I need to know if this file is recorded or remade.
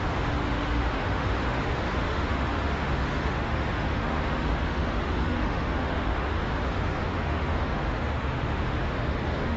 remade